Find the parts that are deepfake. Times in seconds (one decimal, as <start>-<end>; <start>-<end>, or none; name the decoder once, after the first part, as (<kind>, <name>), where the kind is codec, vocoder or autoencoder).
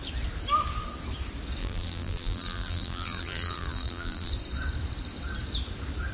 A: 1.6-4.3 (vocoder, BigVGAN v2)